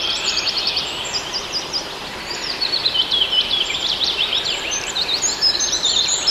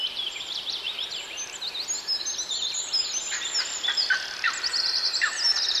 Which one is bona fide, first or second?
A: second